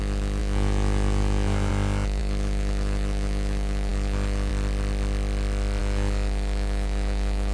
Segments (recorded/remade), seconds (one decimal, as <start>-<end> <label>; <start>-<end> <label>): 0.0-4.5 remade; 4.5-5.8 recorded; 5.8-7.5 remade